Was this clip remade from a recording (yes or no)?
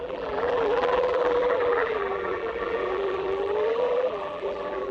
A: yes